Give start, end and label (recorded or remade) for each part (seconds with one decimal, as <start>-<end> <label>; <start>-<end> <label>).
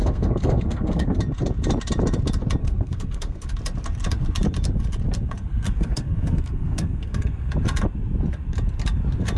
0.0-1.2 remade; 1.2-2.6 recorded; 2.6-3.5 remade; 3.5-5.5 recorded; 5.5-7.5 remade; 7.5-9.4 recorded